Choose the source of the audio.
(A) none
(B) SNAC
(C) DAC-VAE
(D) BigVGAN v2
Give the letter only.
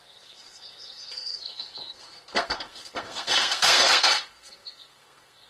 B